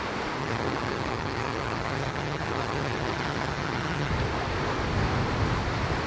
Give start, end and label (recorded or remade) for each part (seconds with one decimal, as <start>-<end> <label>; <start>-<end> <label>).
0.0-0.4 recorded; 0.4-4.1 remade; 4.1-6.1 recorded